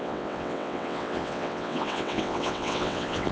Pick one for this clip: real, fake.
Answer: fake